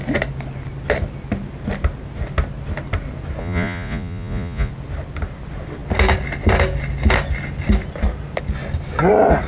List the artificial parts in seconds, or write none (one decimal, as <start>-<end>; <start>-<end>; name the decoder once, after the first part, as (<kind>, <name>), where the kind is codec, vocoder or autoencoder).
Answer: 3.4-4.7 (vocoder, Vocos)